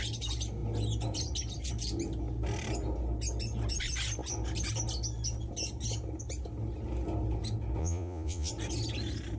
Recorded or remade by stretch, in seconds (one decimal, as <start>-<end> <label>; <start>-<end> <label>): 0.0-7.8 recorded; 7.8-8.5 remade; 8.5-9.4 recorded